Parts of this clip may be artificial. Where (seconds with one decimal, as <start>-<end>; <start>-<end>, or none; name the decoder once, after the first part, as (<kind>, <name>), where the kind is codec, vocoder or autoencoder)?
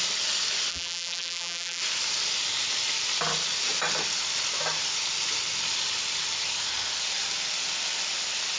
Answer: 0.7-1.8 (vocoder, BigVGAN v2)